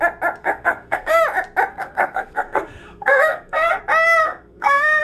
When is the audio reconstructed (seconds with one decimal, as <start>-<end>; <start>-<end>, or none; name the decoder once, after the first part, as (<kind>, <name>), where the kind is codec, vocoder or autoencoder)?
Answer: 0.4-1.2 (codec, SNAC); 1.7-3.8; 4.2-5.0